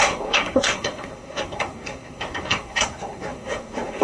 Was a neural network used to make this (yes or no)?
yes